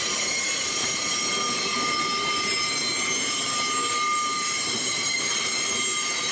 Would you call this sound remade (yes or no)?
yes